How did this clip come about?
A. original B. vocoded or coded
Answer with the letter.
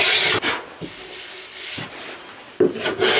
A